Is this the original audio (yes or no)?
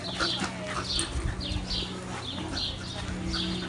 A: yes